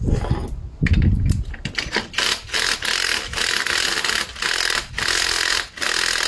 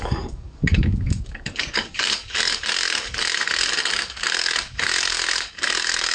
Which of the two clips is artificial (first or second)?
second